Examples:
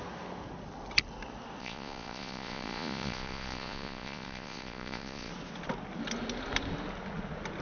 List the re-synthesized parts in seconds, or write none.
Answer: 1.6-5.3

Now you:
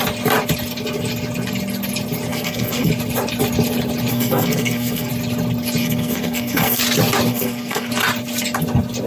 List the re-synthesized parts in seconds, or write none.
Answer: 2.3-2.9; 4.1-5.1; 5.8-6.8; 7.3-7.9